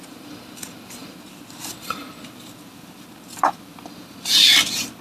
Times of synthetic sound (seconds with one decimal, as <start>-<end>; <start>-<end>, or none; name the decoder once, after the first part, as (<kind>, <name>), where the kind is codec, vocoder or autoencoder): none